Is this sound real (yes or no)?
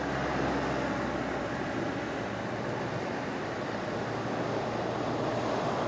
yes